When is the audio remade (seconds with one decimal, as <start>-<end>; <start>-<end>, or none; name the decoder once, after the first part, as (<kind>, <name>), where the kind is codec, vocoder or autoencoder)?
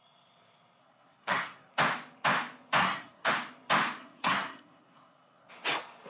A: 0.8-1.7 (codec, SNAC); 2.8-3.3; 4.0-5.5